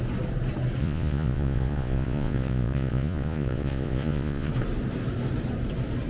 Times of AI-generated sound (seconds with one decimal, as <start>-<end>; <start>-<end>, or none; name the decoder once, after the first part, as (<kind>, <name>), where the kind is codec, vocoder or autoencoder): 0.8-4.5 (vocoder, Vocos)